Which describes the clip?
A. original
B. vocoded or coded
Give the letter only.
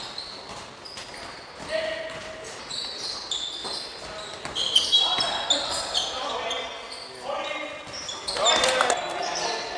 A